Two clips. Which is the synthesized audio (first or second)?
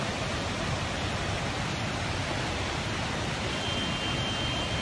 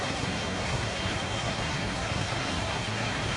second